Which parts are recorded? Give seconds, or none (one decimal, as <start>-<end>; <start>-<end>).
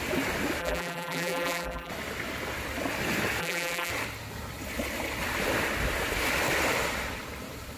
0.0-0.6; 1.9-3.4; 3.9-7.8